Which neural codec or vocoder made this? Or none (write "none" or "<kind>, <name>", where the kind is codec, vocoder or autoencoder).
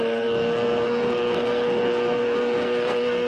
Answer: codec, SNAC